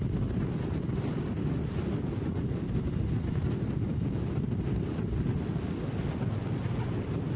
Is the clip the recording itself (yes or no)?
yes